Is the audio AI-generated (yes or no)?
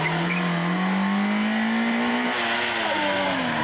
no